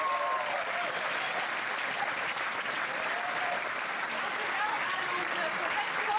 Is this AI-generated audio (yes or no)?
yes